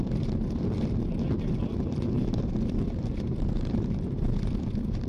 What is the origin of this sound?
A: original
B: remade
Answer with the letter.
B